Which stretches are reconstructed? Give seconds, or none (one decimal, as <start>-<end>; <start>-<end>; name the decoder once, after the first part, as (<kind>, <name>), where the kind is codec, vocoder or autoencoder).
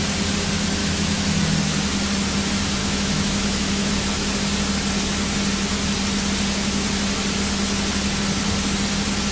0.8-1.4 (autoencoder, DAC-VAE); 2.8-3.9